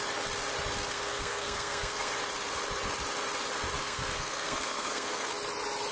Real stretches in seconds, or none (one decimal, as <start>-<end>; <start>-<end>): 0.0-0.9; 2.1-3.8; 5.3-5.9